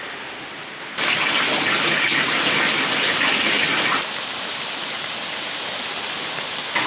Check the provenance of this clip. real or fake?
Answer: real